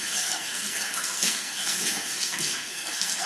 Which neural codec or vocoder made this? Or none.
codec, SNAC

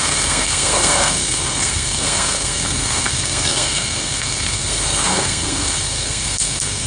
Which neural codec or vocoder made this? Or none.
codec, SNAC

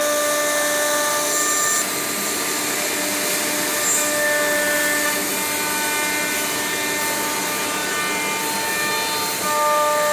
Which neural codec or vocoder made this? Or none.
none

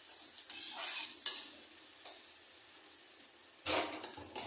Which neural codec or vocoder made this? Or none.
none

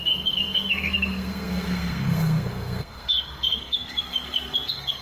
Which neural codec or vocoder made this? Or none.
codec, SNAC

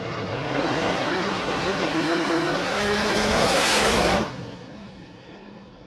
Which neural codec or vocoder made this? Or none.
codec, SNAC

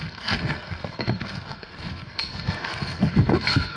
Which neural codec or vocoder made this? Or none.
codec, SNAC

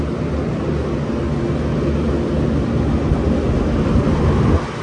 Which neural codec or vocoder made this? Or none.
none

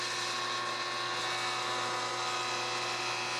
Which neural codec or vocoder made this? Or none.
none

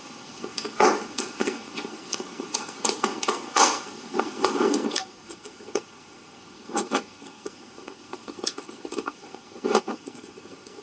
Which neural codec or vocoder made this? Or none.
codec, SNAC